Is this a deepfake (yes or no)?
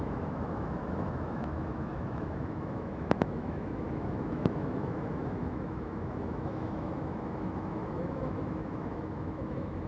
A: yes